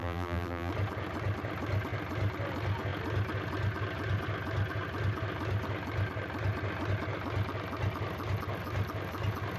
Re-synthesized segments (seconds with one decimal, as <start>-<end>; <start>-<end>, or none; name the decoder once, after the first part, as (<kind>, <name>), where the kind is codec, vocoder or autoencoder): 0.0-0.7 (vocoder, BigVGAN v2)